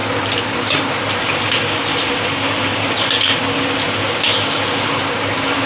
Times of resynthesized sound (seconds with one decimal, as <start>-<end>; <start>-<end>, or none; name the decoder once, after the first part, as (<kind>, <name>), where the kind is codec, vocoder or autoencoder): none